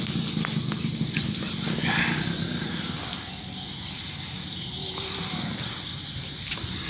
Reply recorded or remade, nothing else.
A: recorded